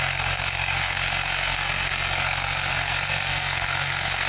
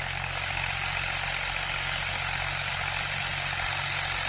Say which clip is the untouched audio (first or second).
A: second